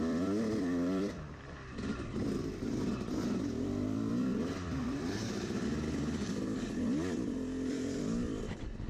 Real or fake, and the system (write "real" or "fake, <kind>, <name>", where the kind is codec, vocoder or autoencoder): fake, vocoder, BigVGAN v2